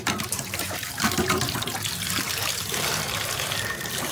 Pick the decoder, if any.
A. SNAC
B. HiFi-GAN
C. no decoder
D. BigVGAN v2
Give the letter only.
D